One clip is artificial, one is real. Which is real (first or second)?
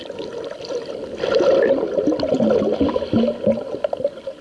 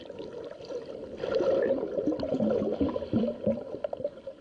first